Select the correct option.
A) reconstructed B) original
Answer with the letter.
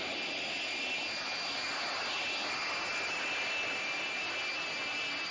B